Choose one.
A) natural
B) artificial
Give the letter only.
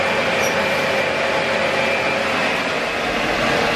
A